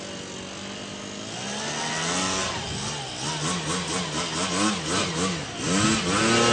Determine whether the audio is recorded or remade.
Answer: recorded